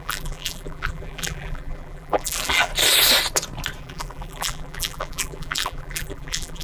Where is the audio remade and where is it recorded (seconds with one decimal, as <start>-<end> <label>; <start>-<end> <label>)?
0.0-2.7 remade; 2.7-3.8 recorded; 3.8-6.6 remade